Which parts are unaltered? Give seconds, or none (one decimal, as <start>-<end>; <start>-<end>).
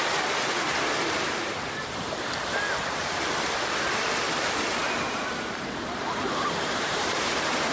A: 0.0-4.8; 7.3-7.7